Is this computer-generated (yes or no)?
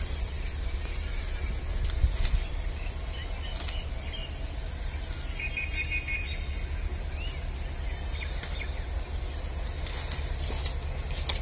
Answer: no